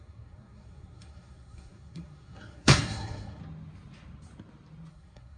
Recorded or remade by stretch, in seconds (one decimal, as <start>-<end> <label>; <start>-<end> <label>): 0.0-3.4 remade; 3.4-4.9 recorded; 4.9-5.4 remade